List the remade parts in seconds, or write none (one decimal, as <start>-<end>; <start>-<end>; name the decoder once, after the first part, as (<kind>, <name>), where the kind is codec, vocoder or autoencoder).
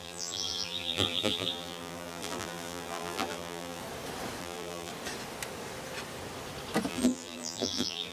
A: 0.0-3.8 (vocoder, BigVGAN v2); 4.4-4.9; 6.9-8.1